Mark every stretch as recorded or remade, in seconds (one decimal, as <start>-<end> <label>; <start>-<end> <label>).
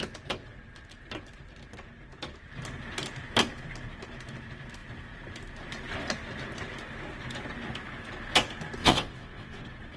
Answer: 0.0-8.8 recorded; 8.8-9.6 remade; 9.6-10.0 recorded